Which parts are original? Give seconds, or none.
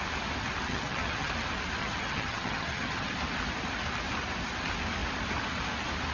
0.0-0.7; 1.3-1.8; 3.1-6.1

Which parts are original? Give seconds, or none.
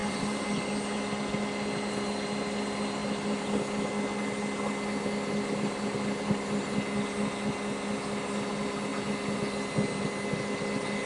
0.7-11.1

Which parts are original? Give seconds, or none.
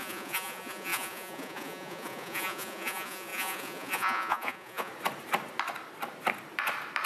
4.9-7.1